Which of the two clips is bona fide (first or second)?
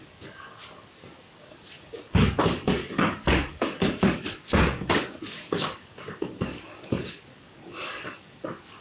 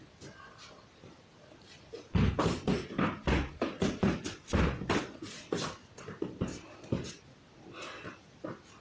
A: second